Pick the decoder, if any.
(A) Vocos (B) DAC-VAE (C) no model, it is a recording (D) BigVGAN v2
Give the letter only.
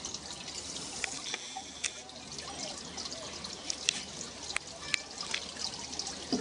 C